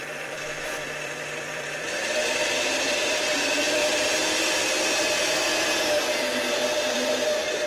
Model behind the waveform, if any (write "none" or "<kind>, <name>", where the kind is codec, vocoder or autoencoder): vocoder, BigVGAN v2